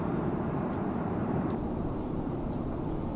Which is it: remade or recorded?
remade